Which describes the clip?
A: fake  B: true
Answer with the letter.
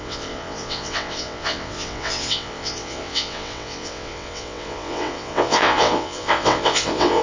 A